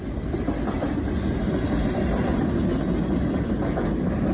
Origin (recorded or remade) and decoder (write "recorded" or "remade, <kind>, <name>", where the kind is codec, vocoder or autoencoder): recorded